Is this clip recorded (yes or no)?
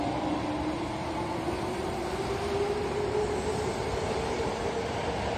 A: yes